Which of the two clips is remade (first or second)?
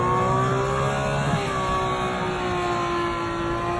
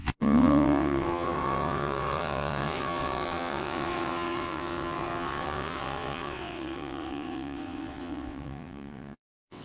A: second